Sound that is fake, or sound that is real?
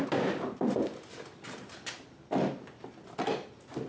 real